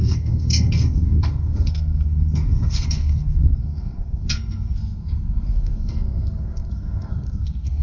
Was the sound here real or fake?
fake